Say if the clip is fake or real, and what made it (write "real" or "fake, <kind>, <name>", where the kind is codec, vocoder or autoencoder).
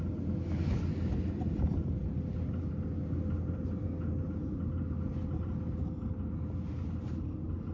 real